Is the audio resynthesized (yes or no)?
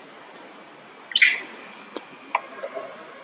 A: no